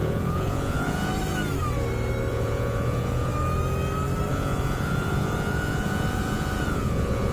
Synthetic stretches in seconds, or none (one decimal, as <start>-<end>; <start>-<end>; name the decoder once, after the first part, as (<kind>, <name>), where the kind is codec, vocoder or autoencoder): 0.0-1.1 (vocoder, Vocos); 2.3-3.3; 4.3-7.3